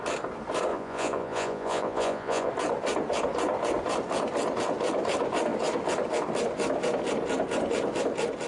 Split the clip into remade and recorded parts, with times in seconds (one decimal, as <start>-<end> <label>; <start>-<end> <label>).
0.0-0.7 recorded; 0.7-2.5 remade; 2.5-8.5 recorded